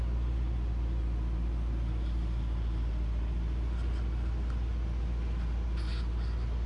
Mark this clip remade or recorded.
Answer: recorded